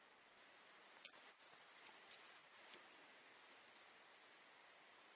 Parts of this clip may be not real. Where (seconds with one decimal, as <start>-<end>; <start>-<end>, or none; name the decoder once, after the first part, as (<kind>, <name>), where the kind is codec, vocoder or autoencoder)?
0.8-1.4 (vocoder, Vocos); 2.4-3.4